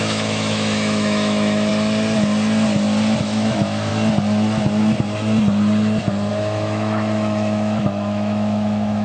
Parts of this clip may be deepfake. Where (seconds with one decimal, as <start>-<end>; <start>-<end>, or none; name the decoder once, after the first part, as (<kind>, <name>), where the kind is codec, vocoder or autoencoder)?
0.0-1.7 (autoencoder, DAC-VAE); 3.2-3.9; 6.3-9.0